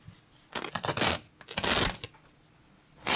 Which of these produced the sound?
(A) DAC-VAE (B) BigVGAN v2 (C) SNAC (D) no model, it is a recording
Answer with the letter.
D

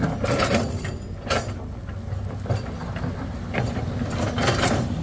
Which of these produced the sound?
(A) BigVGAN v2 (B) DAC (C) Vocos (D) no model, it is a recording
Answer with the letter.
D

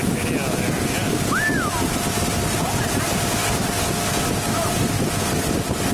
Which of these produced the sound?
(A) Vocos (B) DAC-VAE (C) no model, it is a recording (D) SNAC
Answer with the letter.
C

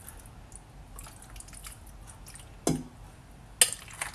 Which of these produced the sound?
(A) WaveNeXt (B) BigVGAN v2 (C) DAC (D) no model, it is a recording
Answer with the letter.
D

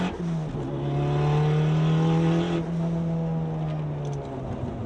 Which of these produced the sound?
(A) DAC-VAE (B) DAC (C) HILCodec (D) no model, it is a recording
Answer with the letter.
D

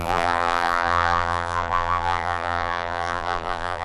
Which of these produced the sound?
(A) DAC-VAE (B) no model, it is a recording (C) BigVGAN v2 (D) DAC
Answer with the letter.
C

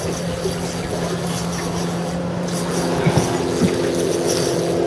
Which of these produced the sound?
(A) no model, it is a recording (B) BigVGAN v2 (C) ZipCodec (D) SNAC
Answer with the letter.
A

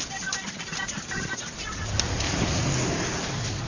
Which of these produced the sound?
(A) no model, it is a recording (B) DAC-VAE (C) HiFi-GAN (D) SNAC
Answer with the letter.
A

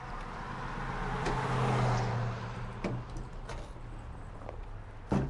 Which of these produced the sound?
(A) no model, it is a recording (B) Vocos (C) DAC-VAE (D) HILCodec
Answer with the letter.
A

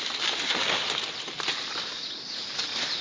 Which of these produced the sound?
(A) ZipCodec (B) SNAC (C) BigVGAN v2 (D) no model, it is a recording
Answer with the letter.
C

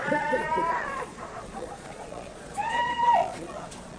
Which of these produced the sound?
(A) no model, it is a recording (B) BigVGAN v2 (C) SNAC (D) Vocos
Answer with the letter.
D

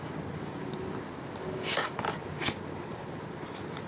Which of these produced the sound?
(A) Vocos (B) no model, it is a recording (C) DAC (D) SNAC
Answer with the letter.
B